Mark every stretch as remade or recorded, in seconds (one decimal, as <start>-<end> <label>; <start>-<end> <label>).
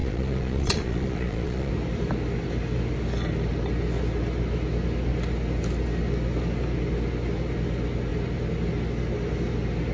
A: 0.0-1.7 remade; 1.7-9.9 recorded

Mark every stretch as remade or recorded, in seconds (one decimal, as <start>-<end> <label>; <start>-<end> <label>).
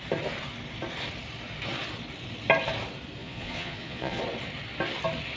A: 0.0-3.2 recorded; 3.2-4.2 remade; 4.2-5.4 recorded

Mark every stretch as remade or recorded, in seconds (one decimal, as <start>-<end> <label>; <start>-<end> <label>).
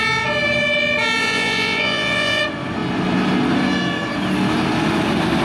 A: 0.0-1.2 recorded; 1.2-2.4 remade; 2.4-5.4 recorded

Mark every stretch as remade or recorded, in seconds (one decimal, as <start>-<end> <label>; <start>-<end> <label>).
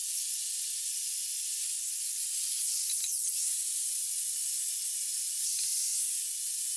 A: 0.0-5.9 recorded; 5.9-6.8 remade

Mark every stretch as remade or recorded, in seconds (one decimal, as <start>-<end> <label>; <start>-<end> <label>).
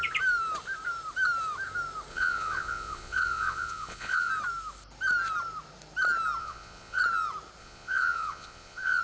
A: 0.0-2.1 recorded; 2.1-4.3 remade; 4.3-6.4 recorded; 6.4-7.0 remade; 7.0-7.6 recorded; 7.6-9.0 remade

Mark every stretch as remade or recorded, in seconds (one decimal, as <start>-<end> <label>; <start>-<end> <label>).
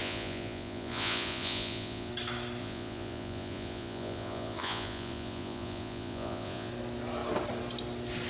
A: 0.0-2.1 remade; 2.1-2.6 recorded; 2.6-6.7 remade; 6.7-8.3 recorded